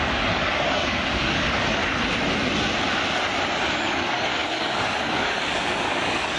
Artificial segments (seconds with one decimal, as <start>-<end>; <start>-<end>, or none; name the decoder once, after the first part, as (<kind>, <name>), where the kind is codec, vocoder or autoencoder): 0.0-1.8 (codec, DAC); 3.7-6.4